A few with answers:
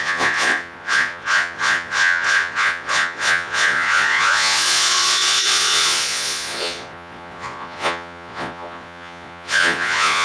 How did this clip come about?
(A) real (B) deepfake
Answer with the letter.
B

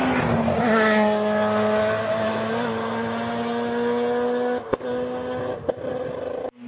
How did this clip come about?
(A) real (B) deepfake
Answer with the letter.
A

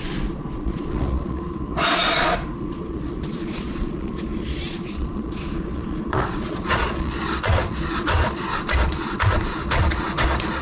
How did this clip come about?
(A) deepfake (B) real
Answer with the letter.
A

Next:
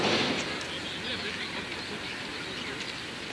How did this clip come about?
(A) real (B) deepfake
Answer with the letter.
A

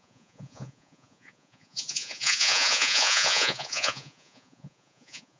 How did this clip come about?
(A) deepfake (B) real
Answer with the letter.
A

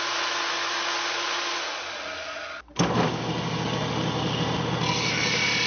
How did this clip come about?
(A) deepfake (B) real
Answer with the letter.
B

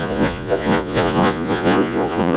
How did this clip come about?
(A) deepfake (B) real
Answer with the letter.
A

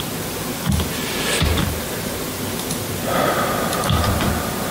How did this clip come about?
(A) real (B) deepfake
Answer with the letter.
A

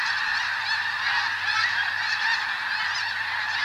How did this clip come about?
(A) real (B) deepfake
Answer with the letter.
A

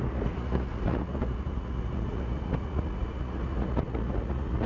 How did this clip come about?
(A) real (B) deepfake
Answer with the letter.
B